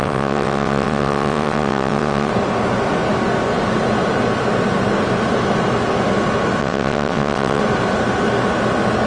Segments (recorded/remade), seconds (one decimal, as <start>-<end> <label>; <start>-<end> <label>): 0.0-2.3 remade; 2.3-6.6 recorded; 6.6-7.6 remade; 7.6-9.1 recorded